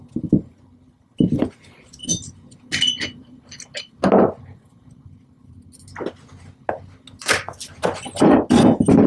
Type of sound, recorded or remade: recorded